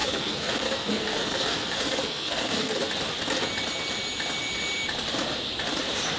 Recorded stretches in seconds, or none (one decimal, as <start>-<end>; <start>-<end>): 2.9-6.2